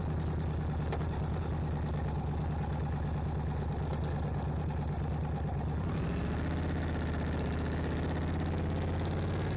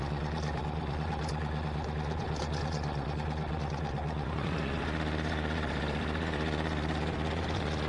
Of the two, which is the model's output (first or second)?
second